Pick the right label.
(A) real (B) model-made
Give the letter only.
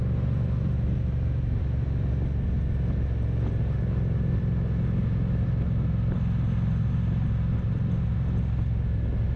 A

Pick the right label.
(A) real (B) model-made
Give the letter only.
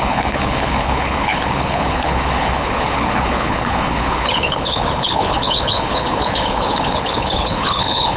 B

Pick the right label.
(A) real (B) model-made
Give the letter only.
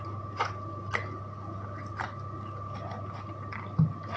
A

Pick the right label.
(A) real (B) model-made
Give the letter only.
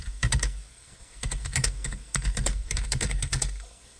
B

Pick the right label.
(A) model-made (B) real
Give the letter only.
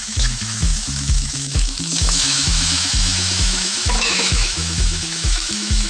A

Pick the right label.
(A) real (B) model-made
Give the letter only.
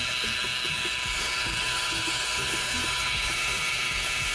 B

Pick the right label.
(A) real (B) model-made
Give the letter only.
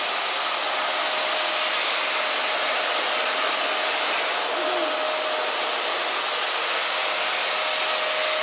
A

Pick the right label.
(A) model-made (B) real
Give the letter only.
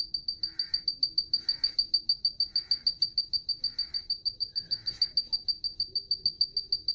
A